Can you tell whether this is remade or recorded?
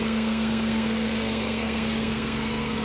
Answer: remade